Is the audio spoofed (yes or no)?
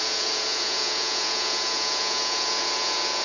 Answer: yes